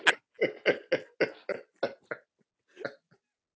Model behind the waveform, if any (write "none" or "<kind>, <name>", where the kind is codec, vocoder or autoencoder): none